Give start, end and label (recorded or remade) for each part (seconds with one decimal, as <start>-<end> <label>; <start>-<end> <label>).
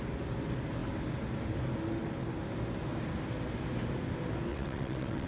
0.0-4.5 recorded; 4.5-5.3 remade